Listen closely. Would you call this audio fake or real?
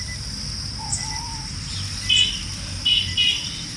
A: real